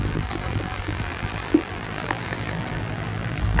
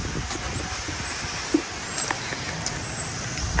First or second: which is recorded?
second